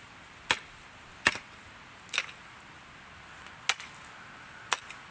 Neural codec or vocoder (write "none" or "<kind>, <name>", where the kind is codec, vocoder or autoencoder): none